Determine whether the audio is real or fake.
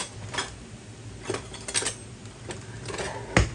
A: real